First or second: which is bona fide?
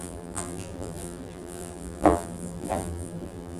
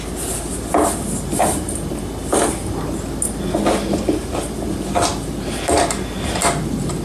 second